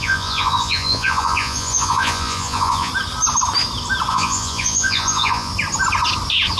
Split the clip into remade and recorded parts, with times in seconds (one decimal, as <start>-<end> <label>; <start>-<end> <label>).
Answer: 0.0-2.9 remade; 2.9-4.1 recorded; 4.1-5.5 remade; 5.5-6.6 recorded